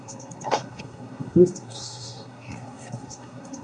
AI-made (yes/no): yes